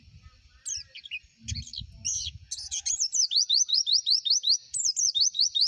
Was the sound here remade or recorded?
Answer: recorded